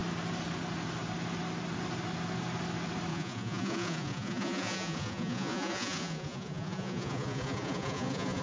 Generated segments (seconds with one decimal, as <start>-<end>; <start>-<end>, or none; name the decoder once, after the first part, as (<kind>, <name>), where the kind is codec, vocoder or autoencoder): 3.1-8.4 (vocoder, Vocos)